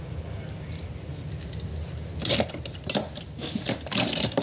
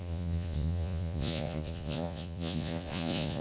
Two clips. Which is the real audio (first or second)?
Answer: first